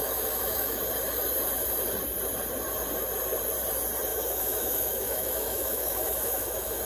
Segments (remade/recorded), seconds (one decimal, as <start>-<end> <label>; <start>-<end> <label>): 0.0-0.8 remade; 0.8-4.1 recorded; 4.1-6.8 remade